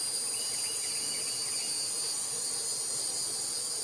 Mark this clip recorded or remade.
recorded